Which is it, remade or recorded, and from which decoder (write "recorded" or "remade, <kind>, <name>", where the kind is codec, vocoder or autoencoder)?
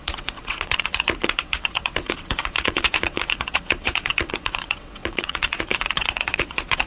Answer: remade, vocoder, WaveNeXt